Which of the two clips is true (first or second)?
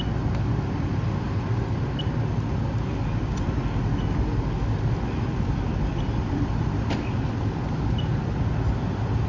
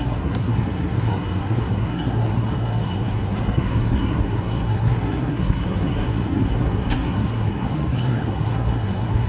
first